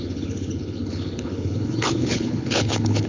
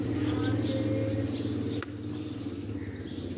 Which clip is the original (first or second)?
second